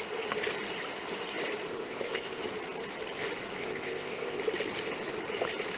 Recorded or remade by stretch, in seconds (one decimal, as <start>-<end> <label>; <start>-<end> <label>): 0.0-1.7 recorded; 1.7-2.4 remade; 2.4-3.6 recorded; 3.6-4.4 remade; 4.4-5.8 recorded